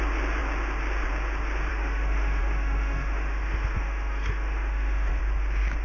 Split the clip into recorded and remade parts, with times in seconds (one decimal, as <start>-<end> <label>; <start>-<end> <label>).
0.0-1.7 recorded; 1.7-5.2 remade; 5.2-5.8 recorded

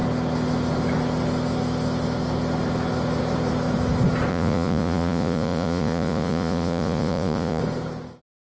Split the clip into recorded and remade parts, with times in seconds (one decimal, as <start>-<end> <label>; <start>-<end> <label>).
0.0-4.3 recorded; 4.3-7.6 remade; 7.6-8.5 recorded